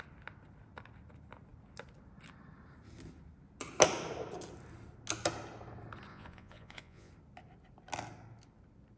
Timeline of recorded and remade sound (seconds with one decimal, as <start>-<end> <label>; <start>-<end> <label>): 0.0-6.1 recorded; 6.1-7.1 remade; 7.1-9.0 recorded

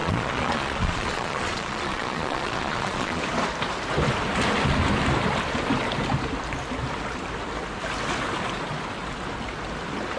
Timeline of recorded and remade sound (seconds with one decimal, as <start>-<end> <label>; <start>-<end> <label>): 0.0-3.2 remade; 3.2-10.2 recorded

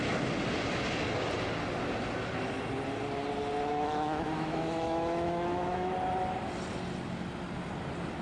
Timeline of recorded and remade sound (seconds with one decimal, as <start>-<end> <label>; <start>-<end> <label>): 0.0-3.7 recorded; 3.7-5.9 remade; 5.9-8.2 recorded

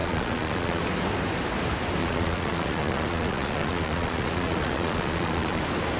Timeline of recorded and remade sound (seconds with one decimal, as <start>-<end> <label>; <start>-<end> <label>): 0.0-0.8 remade; 0.8-2.0 recorded; 2.0-5.6 remade; 5.6-6.0 recorded

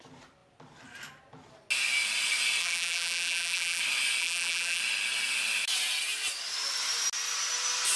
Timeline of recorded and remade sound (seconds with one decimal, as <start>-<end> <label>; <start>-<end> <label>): 0.0-2.6 recorded; 2.6-3.8 remade; 3.8-4.2 recorded; 4.2-4.8 remade; 4.8-8.0 recorded

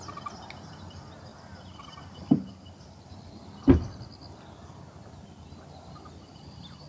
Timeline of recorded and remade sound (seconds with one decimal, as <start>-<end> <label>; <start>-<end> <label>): 0.0-6.9 recorded